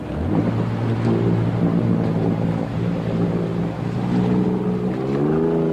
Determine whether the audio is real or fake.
real